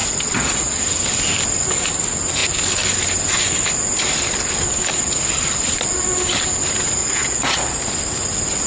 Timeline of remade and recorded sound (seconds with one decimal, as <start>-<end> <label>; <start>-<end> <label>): 0.0-0.8 remade; 0.8-7.0 recorded; 7.0-7.8 remade; 7.8-8.7 recorded

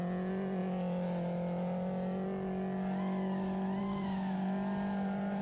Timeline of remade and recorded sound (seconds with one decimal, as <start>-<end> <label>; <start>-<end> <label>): 0.0-5.4 recorded

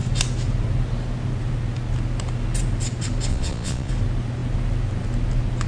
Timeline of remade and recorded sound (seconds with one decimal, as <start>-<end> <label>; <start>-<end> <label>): 0.0-3.3 recorded; 3.3-3.9 remade; 3.9-5.7 recorded

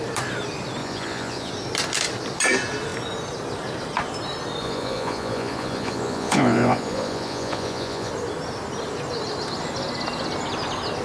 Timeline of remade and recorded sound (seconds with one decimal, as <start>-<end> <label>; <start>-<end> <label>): 0.0-0.8 recorded; 0.8-1.5 remade; 1.5-4.6 recorded; 4.6-8.1 remade; 8.1-11.0 recorded